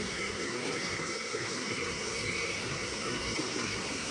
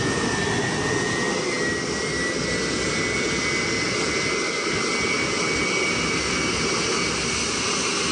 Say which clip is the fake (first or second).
first